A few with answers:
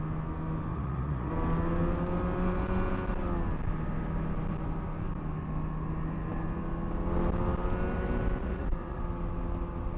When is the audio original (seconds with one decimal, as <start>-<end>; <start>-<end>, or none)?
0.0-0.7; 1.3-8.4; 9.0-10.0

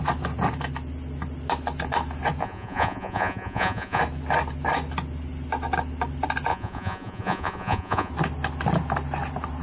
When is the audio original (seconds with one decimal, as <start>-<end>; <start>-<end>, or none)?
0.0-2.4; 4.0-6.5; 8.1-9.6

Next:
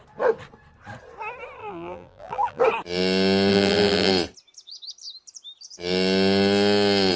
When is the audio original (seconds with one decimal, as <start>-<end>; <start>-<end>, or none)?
0.0-1.6; 2.6-3.5; 4.1-7.2

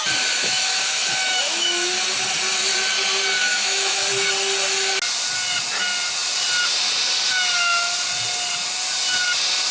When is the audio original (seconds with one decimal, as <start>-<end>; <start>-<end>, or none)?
0.0-0.4; 1.9-3.4; 4.1-9.7